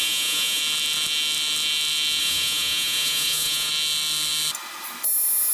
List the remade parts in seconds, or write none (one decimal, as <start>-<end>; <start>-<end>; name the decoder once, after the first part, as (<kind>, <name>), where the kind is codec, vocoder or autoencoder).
0.0-0.6 (vocoder, Vocos); 2.2-3.7